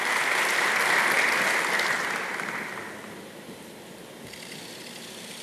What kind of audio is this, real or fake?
real